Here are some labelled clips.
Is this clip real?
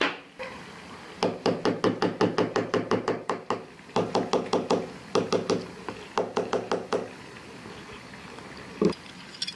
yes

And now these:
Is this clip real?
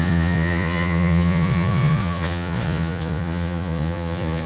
no